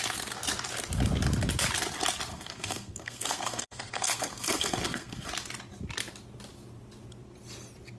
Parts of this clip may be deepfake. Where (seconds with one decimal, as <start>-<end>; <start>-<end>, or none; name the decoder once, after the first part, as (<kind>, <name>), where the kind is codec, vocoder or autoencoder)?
2.3-5.3 (codec, SNAC)